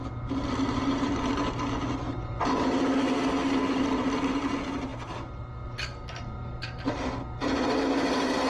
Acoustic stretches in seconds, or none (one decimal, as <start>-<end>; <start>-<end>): 0.0-8.5